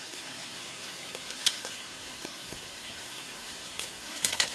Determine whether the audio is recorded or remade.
remade